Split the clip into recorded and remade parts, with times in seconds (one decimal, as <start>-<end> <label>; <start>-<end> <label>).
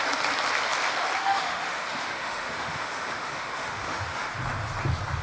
0.0-1.2 recorded; 1.2-4.3 remade; 4.3-5.2 recorded